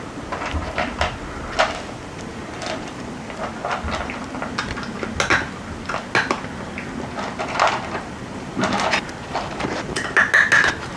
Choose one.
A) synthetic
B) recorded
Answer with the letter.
B